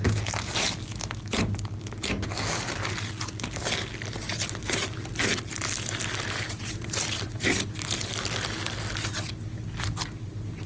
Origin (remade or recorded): recorded